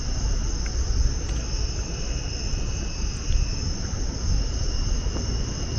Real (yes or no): yes